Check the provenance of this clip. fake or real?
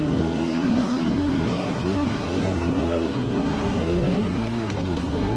fake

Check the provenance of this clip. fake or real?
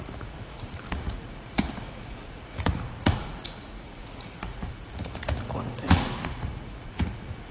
fake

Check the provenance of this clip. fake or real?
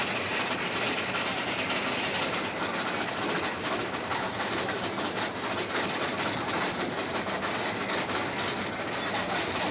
real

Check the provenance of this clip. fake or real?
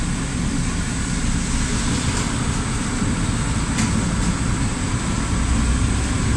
real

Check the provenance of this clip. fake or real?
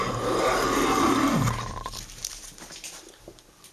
real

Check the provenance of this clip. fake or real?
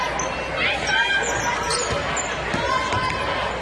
real